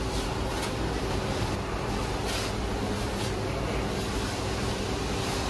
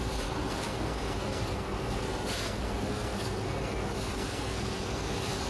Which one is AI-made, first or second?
second